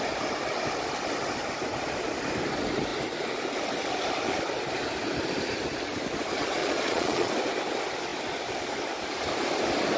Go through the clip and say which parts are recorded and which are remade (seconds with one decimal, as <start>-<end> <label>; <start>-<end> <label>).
0.0-6.6 recorded; 6.6-7.3 remade; 7.3-10.0 recorded